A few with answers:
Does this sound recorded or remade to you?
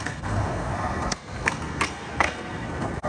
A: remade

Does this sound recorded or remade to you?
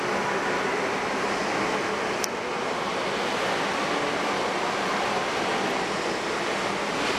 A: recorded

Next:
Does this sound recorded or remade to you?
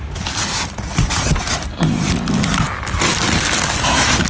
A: recorded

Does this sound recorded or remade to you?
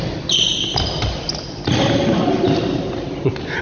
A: recorded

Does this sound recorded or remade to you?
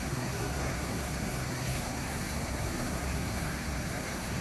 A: remade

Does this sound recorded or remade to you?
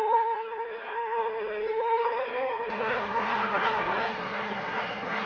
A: remade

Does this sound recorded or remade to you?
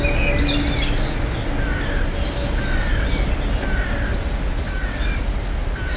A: recorded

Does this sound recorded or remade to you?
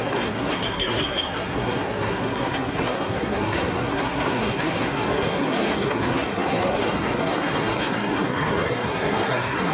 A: remade